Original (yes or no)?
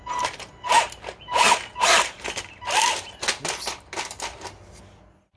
yes